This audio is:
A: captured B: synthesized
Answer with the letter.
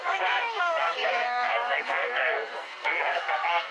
B